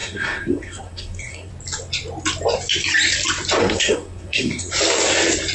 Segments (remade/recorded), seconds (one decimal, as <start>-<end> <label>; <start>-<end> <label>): 0.0-1.5 remade; 1.5-3.6 recorded; 3.6-4.7 remade; 4.7-5.5 recorded